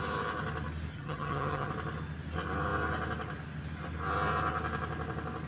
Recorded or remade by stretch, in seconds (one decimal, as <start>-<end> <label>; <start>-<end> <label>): 0.0-0.9 recorded; 0.9-1.7 remade; 1.7-5.5 recorded